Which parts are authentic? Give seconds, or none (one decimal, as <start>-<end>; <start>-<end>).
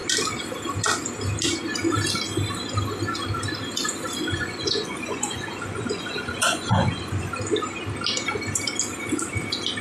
0.0-4.2; 7.3-9.8